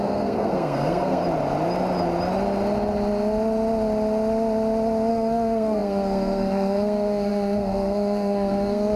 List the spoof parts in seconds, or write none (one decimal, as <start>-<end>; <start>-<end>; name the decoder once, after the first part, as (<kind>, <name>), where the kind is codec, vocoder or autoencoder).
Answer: 0.0-1.2 (codec, SNAC); 5.1-9.0